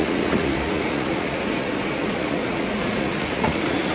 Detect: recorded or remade remade